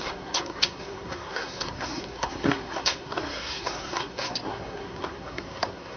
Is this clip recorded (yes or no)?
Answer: no